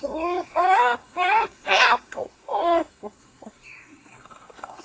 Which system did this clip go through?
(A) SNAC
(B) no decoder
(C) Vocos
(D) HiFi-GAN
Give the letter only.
A